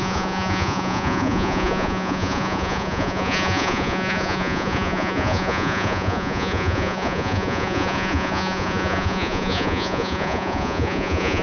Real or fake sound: fake